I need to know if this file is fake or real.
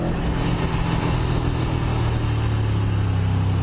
real